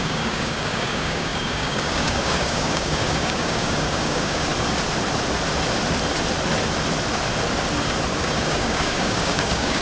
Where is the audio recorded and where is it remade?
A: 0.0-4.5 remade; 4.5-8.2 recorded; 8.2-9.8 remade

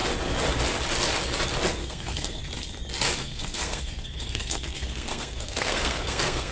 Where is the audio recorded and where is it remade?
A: 0.0-1.8 recorded; 1.8-2.4 remade; 2.4-3.2 recorded; 3.2-6.5 remade

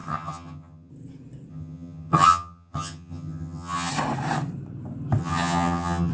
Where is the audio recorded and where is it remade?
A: 0.0-0.9 remade; 0.9-1.5 recorded; 1.5-3.9 remade; 3.9-5.2 recorded; 5.2-6.1 remade

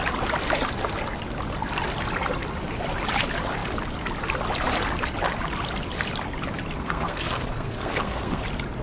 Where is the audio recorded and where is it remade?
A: 0.0-6.8 recorded; 6.8-8.4 remade; 8.4-8.8 recorded

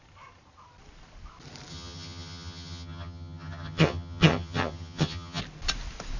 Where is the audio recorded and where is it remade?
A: 0.0-1.7 recorded; 1.7-5.4 remade; 5.4-6.2 recorded

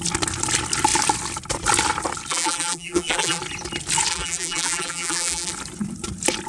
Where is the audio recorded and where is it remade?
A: 0.0-2.3 recorded; 2.3-3.4 remade; 3.4-4.1 recorded; 4.1-5.5 remade; 5.5-6.5 recorded